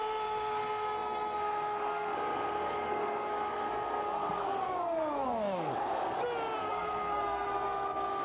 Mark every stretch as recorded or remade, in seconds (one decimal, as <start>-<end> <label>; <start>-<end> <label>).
0.0-5.7 remade; 5.7-6.6 recorded; 6.6-8.2 remade